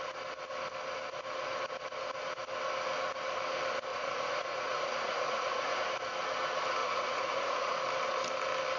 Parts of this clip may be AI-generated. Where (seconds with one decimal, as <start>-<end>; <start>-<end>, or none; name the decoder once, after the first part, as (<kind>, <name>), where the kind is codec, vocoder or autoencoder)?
3.9-5.8 (vocoder, Vocos); 6.8-7.8